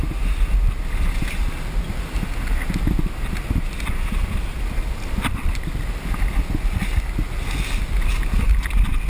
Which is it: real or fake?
real